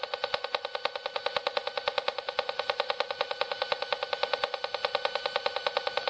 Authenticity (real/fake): fake